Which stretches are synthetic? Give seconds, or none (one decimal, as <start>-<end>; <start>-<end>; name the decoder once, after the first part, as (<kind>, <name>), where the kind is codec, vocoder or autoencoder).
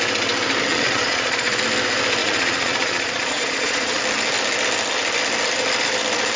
0.7-1.6 (vocoder, Vocos); 2.2-4.0